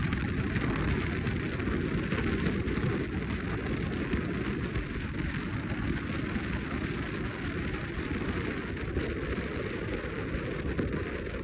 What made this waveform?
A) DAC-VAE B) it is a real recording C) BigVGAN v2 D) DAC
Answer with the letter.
B